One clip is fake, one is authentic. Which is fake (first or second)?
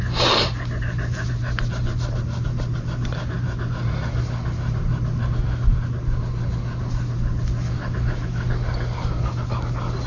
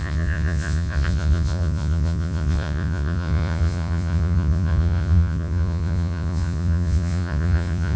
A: second